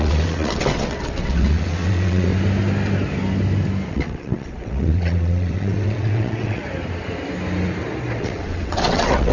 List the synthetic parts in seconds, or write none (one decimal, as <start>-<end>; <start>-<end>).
0.0-2.3; 3.9-6.6; 8.2-9.3